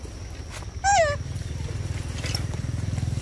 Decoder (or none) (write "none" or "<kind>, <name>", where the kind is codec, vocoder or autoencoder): none